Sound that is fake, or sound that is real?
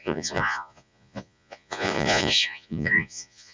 fake